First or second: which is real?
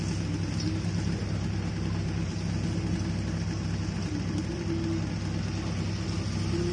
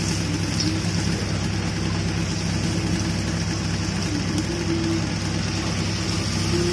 second